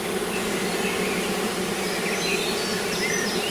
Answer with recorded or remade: recorded